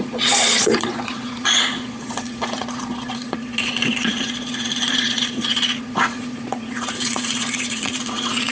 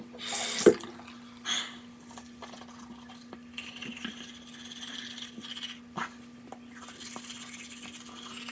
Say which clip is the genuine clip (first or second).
second